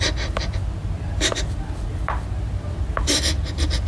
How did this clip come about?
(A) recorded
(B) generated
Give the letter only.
A